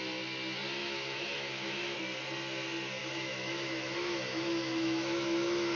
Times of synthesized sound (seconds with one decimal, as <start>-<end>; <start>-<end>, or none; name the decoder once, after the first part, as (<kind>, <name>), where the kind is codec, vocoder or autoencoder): 0.8-2.0 (autoencoder, DAC-VAE); 3.0-5.8